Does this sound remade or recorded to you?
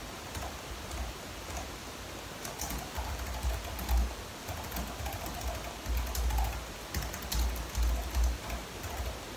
recorded